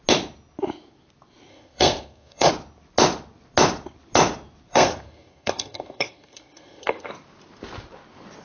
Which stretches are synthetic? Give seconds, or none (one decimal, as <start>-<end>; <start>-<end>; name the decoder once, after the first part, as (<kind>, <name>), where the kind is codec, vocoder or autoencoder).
1.5-2.5 (codec, SNAC); 4.7-7.1